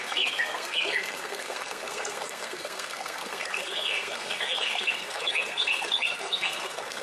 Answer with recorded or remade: remade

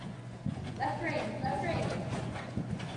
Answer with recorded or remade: remade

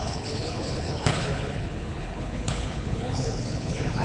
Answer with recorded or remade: remade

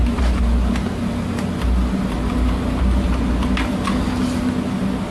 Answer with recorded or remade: recorded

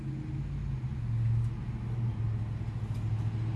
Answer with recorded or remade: recorded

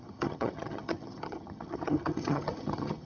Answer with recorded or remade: remade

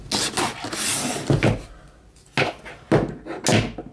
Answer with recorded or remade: recorded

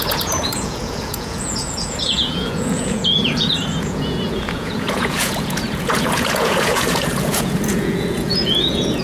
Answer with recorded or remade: remade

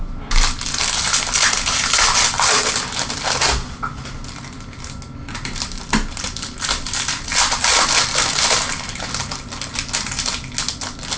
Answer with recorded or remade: recorded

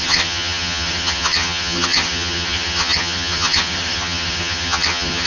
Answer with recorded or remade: remade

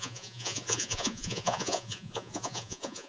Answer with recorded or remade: remade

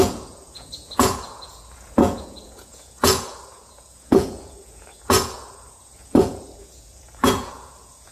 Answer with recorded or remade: remade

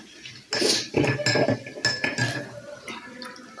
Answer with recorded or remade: recorded